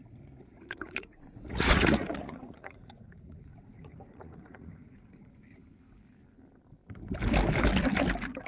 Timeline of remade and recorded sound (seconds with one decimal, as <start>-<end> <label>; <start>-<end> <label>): 0.0-0.5 recorded; 0.5-5.4 remade; 5.4-8.5 recorded